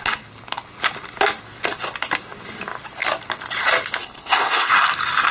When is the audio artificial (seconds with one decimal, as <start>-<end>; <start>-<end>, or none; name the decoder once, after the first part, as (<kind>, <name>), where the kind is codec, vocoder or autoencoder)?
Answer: 4.0-4.7 (codec, HILCodec)